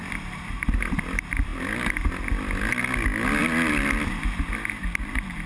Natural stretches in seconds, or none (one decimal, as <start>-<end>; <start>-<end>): 0.0-5.5

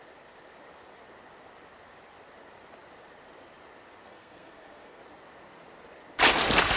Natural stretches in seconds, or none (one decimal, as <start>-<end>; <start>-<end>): 0.0-4.0; 5.0-6.8

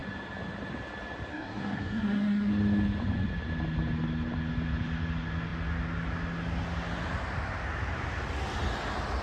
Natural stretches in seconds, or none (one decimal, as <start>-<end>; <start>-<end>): 0.0-1.3; 2.5-9.2

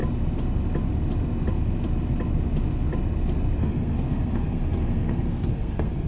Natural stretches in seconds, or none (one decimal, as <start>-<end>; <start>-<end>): 0.0-3.6

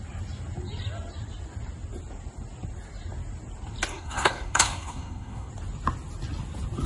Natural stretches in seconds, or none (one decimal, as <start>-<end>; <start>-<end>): 0.0-3.9; 5.5-6.9